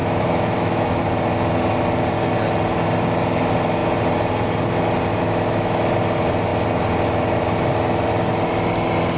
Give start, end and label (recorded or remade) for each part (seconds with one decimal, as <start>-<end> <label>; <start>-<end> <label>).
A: 0.0-1.0 remade; 1.0-5.1 recorded; 5.1-5.9 remade; 5.9-9.2 recorded